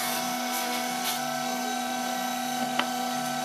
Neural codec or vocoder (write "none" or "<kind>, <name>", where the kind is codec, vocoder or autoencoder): codec, SNAC